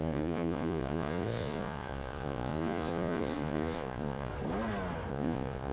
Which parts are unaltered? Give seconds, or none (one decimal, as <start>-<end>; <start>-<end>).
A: 4.3-5.1